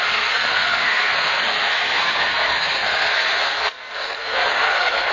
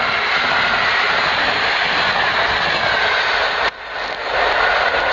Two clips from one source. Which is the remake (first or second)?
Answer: first